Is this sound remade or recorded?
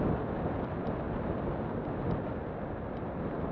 recorded